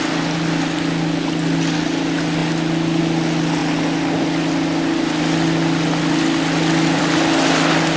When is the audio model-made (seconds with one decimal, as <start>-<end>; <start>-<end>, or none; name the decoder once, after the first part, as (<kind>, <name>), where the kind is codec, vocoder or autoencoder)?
none